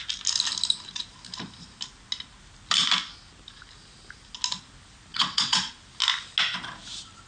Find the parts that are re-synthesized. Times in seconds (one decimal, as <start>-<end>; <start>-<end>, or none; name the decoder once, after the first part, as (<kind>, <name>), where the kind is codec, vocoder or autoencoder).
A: 5.1-5.7 (vocoder, WaveNeXt)